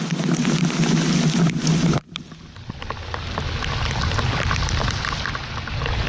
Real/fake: real